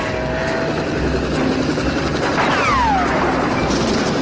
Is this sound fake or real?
real